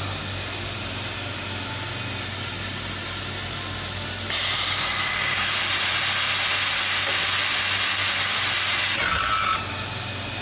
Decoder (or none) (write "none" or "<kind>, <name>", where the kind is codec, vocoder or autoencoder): none